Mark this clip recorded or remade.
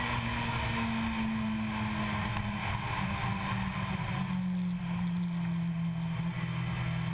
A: recorded